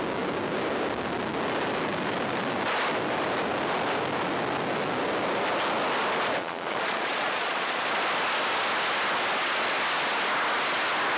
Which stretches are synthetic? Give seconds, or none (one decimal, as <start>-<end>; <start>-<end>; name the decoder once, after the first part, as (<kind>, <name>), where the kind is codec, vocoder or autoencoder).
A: 6.4-7.9 (vocoder, Vocos)

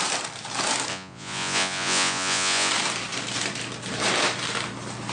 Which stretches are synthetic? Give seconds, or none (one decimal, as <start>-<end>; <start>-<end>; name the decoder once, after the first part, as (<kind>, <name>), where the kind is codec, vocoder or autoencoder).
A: 0.9-2.7 (vocoder, Vocos)

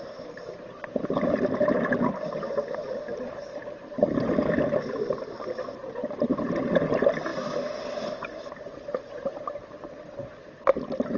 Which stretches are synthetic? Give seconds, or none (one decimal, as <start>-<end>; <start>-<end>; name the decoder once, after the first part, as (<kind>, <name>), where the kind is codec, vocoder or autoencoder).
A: none

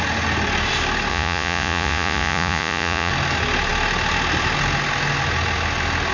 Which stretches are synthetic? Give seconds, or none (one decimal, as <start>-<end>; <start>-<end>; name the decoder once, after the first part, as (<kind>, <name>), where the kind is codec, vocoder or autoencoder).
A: 1.1-3.1 (vocoder, Vocos)

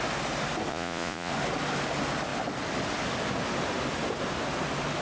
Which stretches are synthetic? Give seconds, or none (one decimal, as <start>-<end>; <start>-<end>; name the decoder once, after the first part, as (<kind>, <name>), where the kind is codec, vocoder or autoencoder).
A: 0.7-1.3 (vocoder, Vocos)

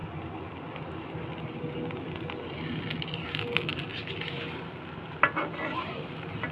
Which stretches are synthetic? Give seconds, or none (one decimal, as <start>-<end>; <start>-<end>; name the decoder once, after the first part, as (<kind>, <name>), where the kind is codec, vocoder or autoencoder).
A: none

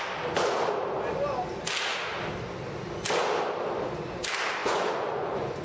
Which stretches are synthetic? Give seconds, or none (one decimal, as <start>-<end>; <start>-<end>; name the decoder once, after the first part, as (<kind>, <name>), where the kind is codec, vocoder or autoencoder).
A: 4.6-5.6 (vocoder, Vocos)